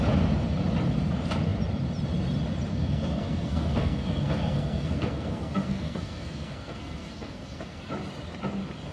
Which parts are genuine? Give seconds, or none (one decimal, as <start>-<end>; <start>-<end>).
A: 0.0-2.7; 7.8-8.9